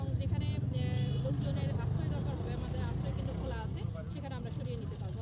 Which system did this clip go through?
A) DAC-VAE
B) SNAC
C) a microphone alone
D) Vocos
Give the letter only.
C